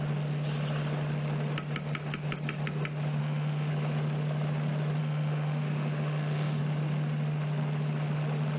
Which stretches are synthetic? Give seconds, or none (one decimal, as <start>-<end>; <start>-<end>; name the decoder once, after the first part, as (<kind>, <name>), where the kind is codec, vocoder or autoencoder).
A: 3.2-3.7 (autoencoder, DAC-VAE); 5.0-6.6